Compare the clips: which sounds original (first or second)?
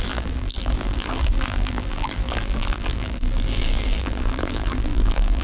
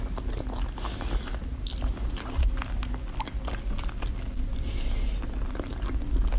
second